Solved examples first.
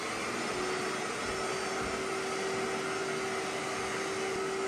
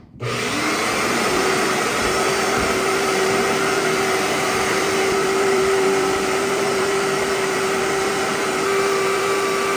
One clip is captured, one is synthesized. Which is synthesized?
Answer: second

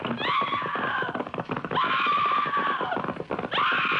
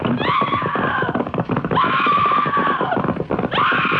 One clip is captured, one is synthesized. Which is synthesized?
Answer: second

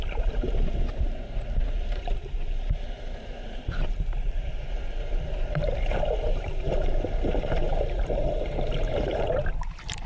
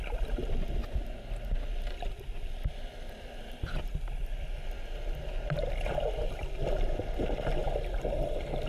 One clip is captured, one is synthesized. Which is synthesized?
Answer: first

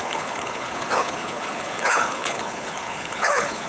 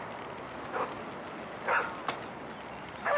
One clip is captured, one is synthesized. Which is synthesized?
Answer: first